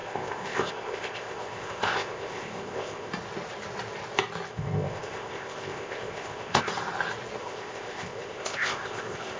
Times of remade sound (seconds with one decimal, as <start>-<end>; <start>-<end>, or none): 0.0-3.1; 4.5-6.7; 7.4-9.4